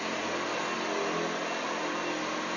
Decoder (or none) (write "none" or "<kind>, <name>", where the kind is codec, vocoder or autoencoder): none